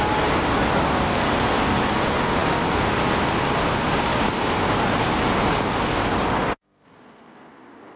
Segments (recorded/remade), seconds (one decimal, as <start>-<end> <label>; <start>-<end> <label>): 0.0-8.0 recorded